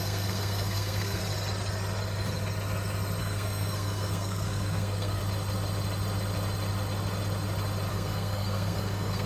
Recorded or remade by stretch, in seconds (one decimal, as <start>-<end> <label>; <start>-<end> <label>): 0.0-1.2 remade; 1.2-3.2 recorded; 3.2-5.2 remade; 5.2-7.9 recorded; 7.9-9.3 remade